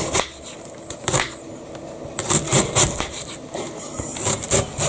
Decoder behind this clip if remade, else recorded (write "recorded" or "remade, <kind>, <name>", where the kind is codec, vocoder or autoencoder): recorded